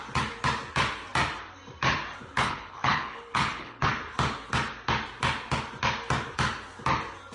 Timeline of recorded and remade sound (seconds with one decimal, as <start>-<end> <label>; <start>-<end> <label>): 0.0-2.2 recorded; 2.2-3.9 remade; 3.9-7.3 recorded